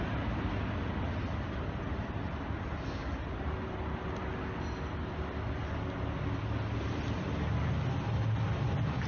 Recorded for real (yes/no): yes